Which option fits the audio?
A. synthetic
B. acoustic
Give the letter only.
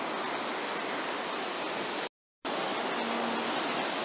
B